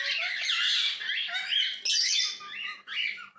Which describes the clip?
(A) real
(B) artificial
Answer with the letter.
A